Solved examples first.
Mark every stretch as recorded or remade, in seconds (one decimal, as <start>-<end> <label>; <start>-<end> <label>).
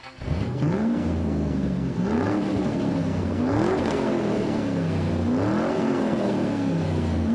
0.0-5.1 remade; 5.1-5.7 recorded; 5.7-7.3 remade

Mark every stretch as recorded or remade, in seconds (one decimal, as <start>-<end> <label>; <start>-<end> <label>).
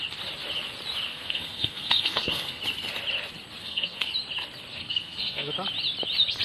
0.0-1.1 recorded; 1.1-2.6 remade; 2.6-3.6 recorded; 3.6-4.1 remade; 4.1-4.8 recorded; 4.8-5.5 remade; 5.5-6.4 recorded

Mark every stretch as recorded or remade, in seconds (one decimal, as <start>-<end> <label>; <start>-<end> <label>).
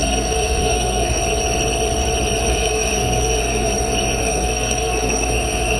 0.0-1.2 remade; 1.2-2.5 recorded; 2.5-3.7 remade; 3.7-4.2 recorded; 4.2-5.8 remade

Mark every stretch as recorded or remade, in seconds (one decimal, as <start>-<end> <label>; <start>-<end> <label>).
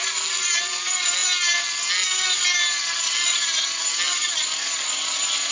0.0-5.5 recorded